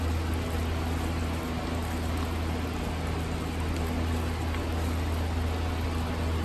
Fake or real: real